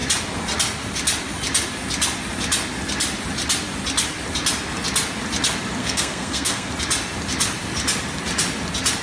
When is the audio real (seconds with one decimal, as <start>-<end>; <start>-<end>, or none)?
0.0-5.8; 6.7-9.0